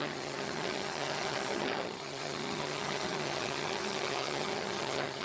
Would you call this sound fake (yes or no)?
yes